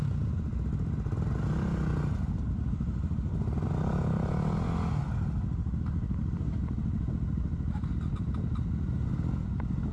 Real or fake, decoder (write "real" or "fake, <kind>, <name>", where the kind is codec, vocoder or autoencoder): real